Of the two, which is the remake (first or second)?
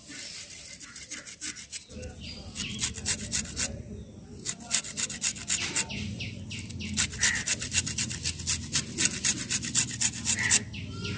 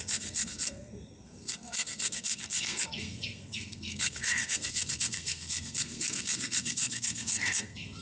second